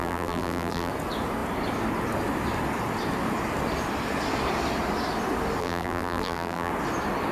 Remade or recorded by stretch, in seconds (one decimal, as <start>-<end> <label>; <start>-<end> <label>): 0.0-0.9 remade; 0.9-5.6 recorded; 5.6-6.7 remade; 6.7-7.3 recorded